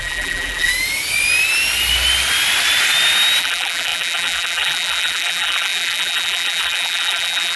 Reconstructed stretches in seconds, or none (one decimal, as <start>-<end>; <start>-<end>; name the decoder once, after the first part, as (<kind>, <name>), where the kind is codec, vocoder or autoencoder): 0.0-0.7 (vocoder, BigVGAN v2); 3.4-7.6